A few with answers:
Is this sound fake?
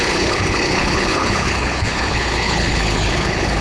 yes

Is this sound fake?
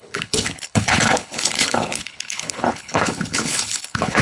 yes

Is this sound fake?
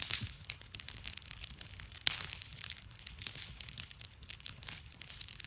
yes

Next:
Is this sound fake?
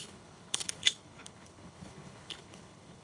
yes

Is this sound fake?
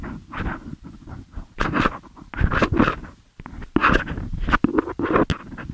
no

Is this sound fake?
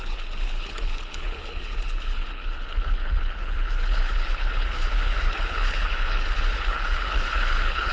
yes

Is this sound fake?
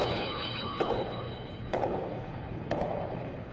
yes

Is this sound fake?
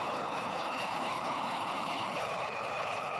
yes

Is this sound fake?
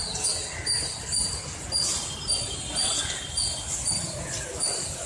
no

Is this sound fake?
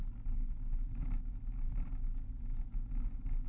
no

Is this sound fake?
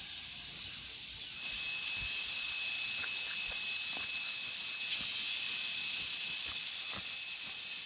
no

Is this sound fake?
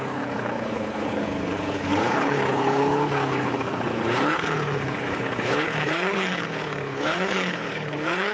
yes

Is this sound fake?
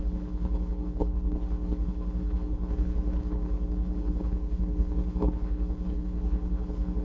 yes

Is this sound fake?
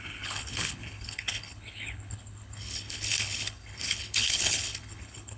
yes